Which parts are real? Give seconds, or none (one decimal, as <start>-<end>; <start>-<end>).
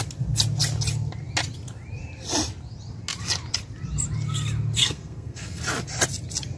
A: 0.0-4.8; 5.6-6.6